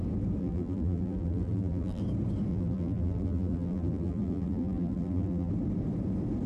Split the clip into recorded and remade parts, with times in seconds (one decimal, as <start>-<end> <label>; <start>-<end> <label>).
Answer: 0.0-0.4 recorded; 0.4-2.0 remade; 2.0-2.5 recorded; 2.5-5.5 remade; 5.5-6.5 recorded